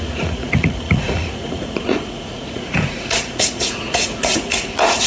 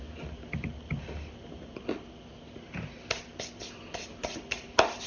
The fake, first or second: first